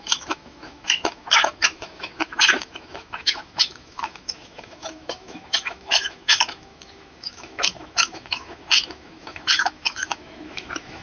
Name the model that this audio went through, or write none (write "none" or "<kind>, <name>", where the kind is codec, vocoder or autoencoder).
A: autoencoder, DAC-VAE